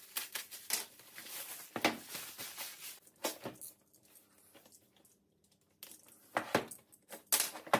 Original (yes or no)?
yes